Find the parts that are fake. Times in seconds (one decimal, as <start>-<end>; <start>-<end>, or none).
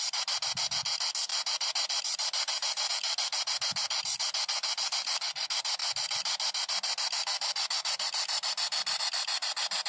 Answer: none